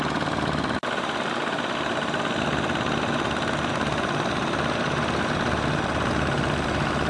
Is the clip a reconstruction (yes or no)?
no